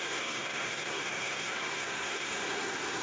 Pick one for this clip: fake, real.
fake